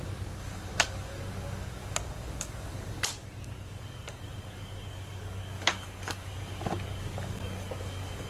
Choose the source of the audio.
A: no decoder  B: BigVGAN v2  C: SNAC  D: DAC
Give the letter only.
D